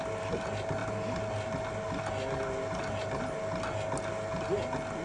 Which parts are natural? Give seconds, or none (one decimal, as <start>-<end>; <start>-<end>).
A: 0.0-5.0